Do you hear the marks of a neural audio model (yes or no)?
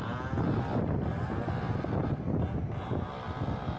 no